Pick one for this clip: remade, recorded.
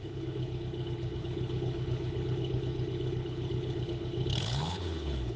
remade